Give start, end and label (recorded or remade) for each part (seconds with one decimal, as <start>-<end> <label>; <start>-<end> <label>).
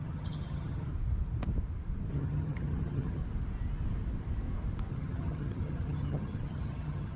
0.0-0.9 remade; 0.9-2.1 recorded; 2.1-3.2 remade; 3.2-4.9 recorded; 4.9-7.2 remade